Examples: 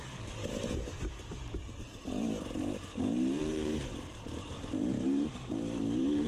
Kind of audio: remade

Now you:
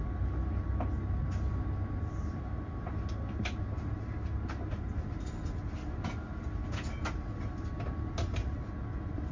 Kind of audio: recorded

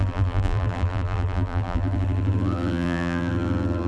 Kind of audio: remade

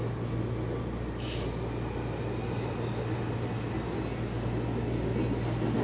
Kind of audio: recorded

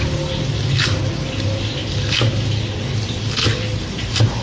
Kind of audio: recorded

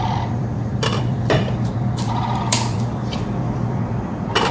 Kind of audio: remade